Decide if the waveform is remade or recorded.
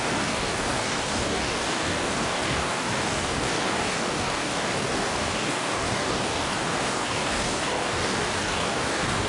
remade